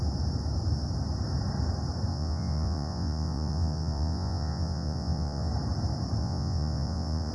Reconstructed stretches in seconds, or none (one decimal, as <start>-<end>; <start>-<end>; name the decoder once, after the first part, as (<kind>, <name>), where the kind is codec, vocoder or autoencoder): 2.1-5.5 (vocoder, Vocos); 6.2-7.3